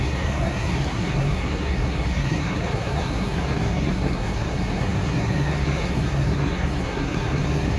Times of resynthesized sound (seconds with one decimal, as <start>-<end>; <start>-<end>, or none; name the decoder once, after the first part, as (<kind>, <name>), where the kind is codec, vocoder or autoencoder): 0.0-7.8 (codec, SNAC)